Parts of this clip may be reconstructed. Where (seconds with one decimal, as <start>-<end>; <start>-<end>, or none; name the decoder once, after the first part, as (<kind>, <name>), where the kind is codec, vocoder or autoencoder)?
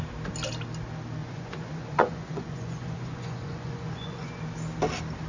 1.2-4.4 (vocoder, Vocos)